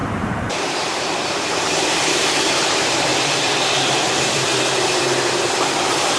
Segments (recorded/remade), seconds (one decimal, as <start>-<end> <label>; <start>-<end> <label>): 0.0-3.1 remade; 3.1-4.1 recorded; 4.1-4.5 remade; 4.5-5.6 recorded; 5.6-6.2 remade